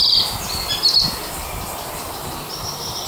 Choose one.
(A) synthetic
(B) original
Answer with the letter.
B